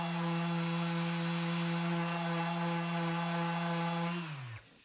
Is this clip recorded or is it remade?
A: recorded